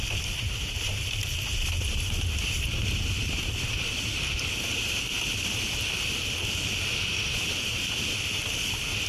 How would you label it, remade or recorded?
recorded